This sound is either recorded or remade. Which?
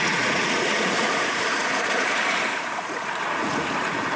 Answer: remade